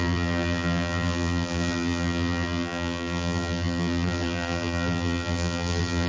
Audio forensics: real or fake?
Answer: fake